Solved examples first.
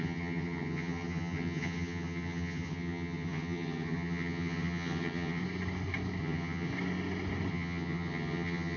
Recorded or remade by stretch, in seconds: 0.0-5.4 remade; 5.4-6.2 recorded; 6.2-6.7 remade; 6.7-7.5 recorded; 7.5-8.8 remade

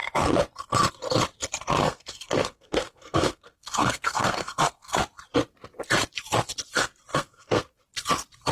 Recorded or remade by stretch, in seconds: 0.0-1.8 recorded; 1.8-5.0 remade; 5.0-7.1 recorded; 7.1-7.8 remade; 7.8-8.5 recorded